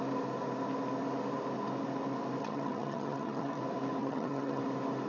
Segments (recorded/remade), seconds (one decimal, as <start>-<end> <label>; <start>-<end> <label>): 0.0-2.4 recorded; 2.4-3.6 remade; 3.6-4.0 recorded; 4.0-4.6 remade; 4.6-5.1 recorded